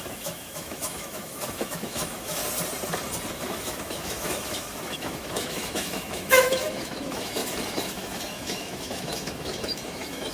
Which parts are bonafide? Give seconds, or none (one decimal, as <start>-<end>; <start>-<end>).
2.4-3.4